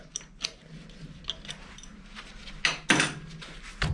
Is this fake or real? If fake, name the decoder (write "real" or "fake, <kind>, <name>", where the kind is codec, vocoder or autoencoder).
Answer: real